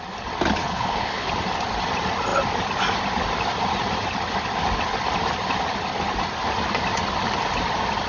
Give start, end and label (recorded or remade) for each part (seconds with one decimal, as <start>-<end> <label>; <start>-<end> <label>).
0.0-0.6 recorded; 0.6-1.3 remade; 1.3-8.1 recorded